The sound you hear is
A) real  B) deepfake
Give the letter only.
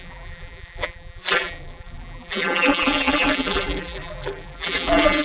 B